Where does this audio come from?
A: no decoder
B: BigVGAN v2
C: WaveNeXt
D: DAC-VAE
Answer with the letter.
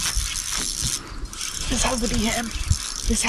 A